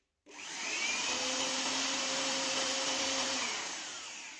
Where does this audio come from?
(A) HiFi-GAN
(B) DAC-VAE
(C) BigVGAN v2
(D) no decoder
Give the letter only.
C